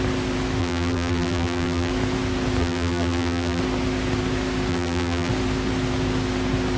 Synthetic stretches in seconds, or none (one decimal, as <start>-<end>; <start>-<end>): 0.6-1.9; 2.6-3.6; 4.7-5.3